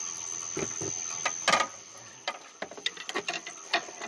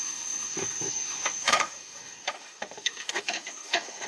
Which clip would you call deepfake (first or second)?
second